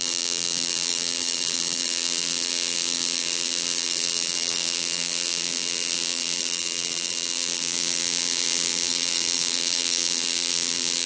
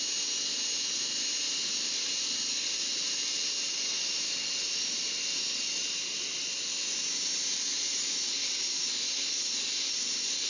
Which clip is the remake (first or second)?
first